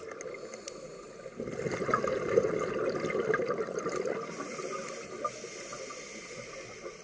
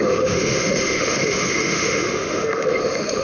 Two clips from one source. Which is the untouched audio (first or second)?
first